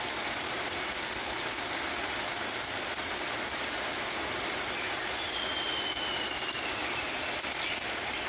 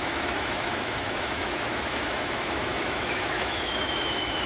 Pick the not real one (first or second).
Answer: second